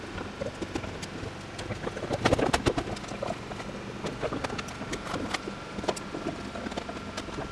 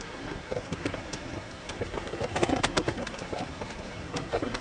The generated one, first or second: second